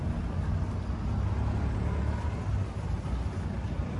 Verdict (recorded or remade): recorded